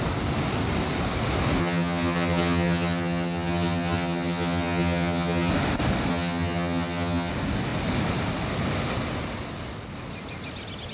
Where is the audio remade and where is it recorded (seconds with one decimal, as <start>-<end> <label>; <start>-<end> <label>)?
0.0-1.6 recorded; 1.6-5.5 remade; 5.5-6.1 recorded; 6.1-7.3 remade; 7.3-10.9 recorded